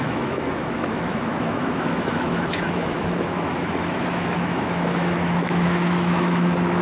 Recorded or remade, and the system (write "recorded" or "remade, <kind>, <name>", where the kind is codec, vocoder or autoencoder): remade, autoencoder, DAC-VAE